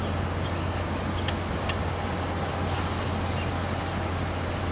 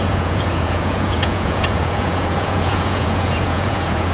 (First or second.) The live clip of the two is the first